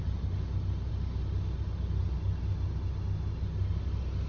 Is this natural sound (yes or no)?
yes